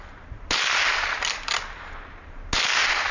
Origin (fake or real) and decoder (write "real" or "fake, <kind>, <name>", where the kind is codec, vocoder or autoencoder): real